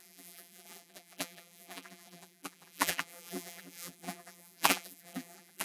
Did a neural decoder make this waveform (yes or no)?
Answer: yes